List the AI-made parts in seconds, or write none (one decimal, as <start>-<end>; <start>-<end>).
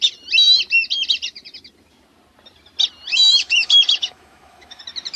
3.1-4.8